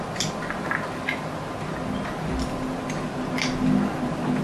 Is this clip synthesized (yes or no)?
no